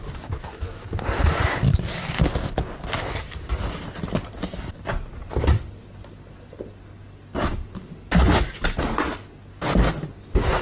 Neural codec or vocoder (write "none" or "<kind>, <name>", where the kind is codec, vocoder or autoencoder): none